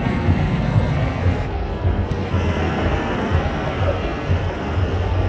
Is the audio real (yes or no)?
no